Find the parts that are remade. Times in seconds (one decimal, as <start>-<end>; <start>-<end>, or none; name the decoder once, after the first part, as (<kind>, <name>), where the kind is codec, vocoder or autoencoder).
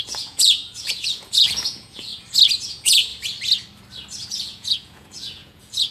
0.0-2.1 (vocoder, Vocos); 2.7-3.1; 4.3-5.9